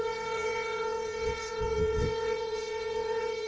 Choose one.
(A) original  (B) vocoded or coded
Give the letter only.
B